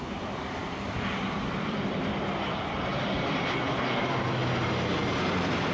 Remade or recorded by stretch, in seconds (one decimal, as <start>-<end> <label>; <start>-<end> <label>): 0.0-0.6 remade; 0.6-1.6 recorded; 1.6-2.9 remade; 2.9-4.0 recorded; 4.0-4.4 remade; 4.4-5.1 recorded; 5.1-5.7 remade

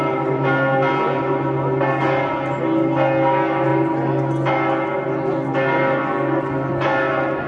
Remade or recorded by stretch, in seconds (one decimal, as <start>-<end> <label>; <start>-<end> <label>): 0.0-7.5 recorded

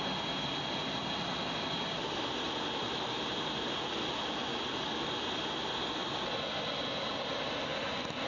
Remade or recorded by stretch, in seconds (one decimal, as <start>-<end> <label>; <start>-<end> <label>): 0.0-8.3 recorded

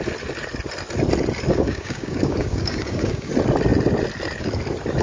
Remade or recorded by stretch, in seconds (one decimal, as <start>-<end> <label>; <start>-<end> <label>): 0.0-1.5 recorded; 1.5-3.3 remade; 3.3-5.0 recorded

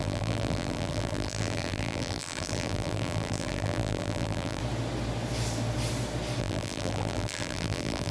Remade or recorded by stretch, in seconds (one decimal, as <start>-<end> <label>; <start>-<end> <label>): 0.0-4.6 remade; 4.6-6.4 recorded; 6.4-8.1 remade

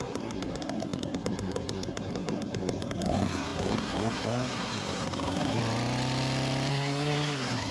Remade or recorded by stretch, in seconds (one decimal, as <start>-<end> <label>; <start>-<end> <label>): 0.0-5.6 remade; 5.6-6.7 recorded; 6.7-7.7 remade